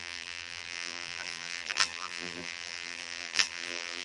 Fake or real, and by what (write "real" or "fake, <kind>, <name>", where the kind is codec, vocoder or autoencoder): fake, vocoder, BigVGAN v2